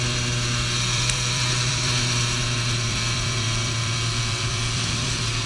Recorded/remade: remade